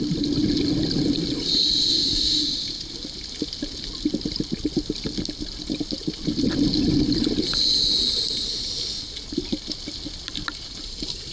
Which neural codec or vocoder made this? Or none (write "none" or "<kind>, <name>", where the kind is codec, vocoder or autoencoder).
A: none